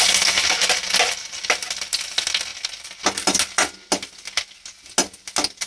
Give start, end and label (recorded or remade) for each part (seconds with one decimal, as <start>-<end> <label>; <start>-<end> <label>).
0.0-5.7 recorded